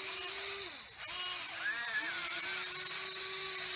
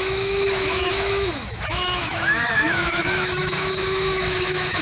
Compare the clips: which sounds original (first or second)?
first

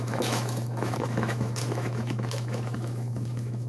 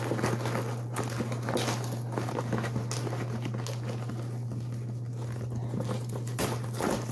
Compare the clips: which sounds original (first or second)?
second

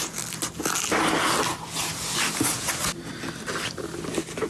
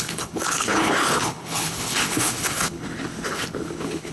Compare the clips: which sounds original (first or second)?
first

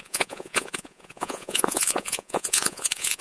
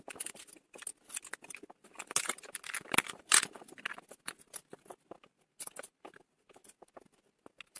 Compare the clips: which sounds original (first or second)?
second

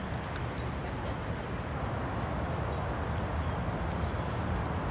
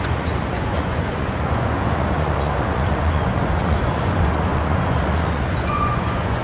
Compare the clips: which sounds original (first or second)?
first